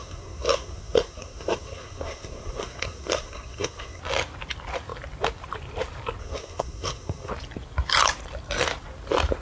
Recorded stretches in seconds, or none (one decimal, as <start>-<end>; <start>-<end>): 4.0-6.2; 7.3-9.4